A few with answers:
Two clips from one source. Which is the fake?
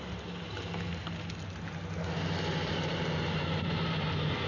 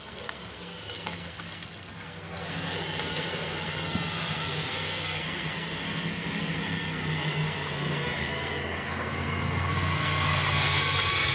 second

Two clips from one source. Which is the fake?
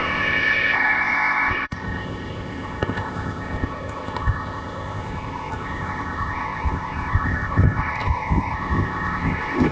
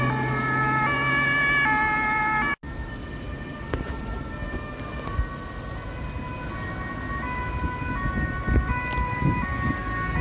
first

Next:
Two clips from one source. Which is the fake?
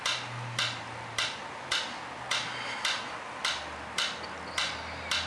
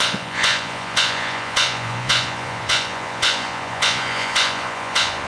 second